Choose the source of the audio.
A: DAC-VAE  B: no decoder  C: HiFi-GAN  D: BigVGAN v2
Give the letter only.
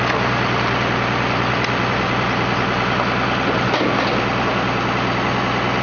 B